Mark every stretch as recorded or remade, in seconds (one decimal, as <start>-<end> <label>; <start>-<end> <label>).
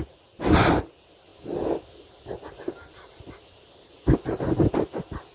0.0-5.3 recorded